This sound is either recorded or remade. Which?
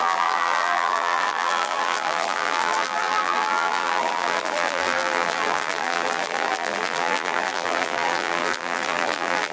remade